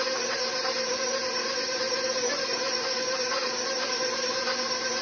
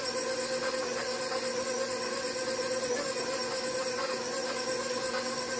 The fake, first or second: first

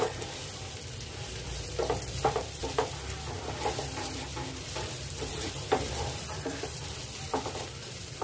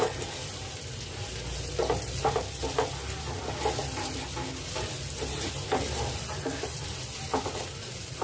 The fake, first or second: first